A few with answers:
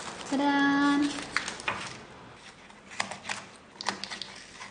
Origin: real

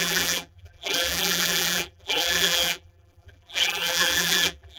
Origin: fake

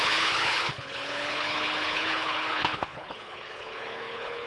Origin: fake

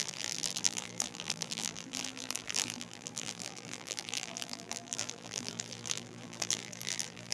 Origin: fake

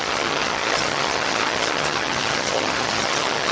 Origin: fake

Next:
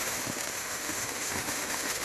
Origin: fake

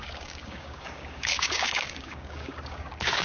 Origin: fake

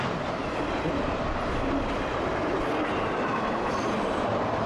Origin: fake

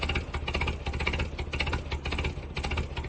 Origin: real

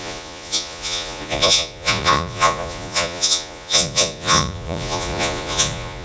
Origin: fake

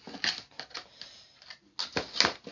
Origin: real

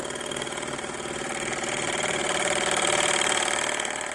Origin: fake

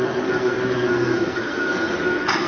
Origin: fake